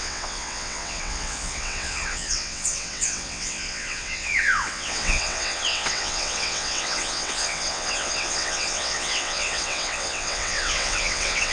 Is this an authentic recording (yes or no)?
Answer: no